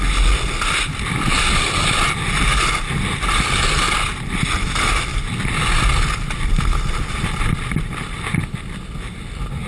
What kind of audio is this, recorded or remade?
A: recorded